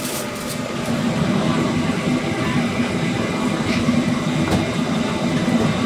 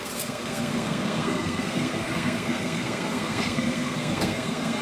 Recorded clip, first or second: first